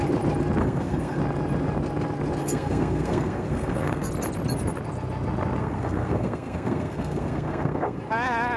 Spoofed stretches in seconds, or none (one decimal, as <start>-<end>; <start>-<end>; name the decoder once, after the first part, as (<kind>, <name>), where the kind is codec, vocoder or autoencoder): 0.6-1.2 (codec, SNAC); 2.4-4.1; 5.6-8.0